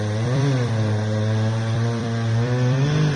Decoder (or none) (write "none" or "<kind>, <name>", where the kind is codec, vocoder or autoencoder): vocoder, BigVGAN v2